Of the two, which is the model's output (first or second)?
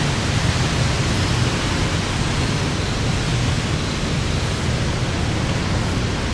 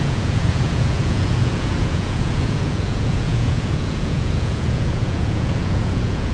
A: second